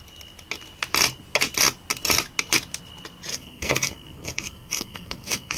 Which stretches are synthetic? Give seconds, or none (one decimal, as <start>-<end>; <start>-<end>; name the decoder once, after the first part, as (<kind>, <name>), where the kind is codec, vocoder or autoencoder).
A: 3.3-5.6 (codec, SNAC)